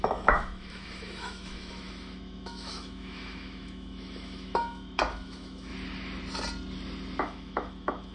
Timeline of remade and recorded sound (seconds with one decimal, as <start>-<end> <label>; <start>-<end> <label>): 0.0-5.7 remade; 5.7-7.2 recorded; 7.2-8.1 remade